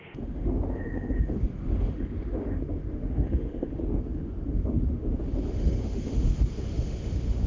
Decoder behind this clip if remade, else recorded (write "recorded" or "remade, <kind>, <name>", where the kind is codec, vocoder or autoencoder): remade, autoencoder, DAC-VAE